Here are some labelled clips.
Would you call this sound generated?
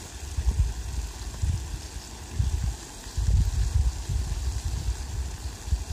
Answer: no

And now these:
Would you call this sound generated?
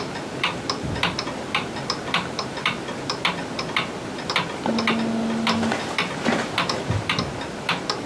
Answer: no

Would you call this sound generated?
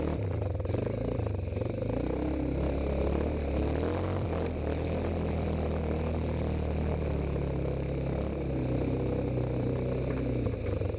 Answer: no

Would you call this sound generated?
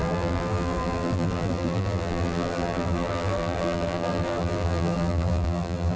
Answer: yes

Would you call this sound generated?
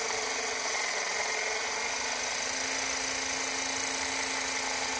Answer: no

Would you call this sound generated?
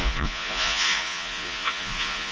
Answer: yes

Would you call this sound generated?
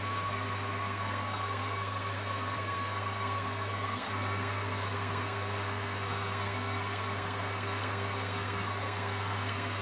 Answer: yes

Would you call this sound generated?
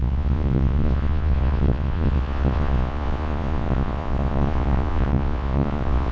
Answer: yes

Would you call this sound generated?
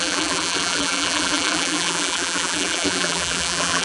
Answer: yes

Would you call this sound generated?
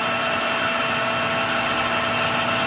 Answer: no